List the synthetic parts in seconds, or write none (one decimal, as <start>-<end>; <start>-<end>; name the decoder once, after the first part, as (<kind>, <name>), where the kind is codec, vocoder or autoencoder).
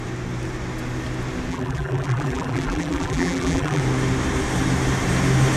1.5-3.8 (vocoder, BigVGAN v2)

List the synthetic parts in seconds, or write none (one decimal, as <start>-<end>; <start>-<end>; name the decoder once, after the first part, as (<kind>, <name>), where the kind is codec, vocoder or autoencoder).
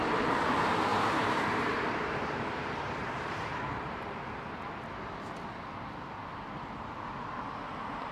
0.9-4.3 (vocoder, BigVGAN v2)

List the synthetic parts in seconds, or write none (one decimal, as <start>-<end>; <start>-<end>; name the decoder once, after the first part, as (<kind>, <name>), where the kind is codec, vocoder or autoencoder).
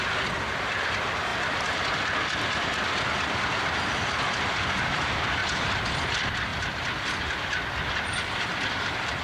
0.0-5.4 (vocoder, BigVGAN v2); 6.0-6.5; 7.9-9.2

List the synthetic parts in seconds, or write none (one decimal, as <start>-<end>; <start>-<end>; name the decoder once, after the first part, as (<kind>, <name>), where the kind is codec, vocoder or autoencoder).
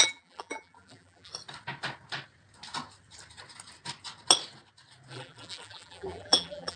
0.0-1.3 (vocoder, BigVGAN v2); 5.1-6.8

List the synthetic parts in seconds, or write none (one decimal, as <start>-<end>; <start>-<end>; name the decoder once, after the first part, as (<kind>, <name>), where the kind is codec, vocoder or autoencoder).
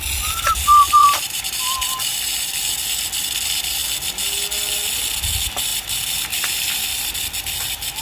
1.0-2.6 (vocoder, BigVGAN v2); 5.7-7.1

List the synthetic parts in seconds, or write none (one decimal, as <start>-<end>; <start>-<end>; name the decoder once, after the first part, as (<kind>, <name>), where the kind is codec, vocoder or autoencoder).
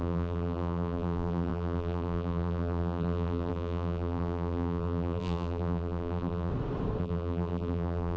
0.0-6.5 (vocoder, BigVGAN v2); 7.0-8.2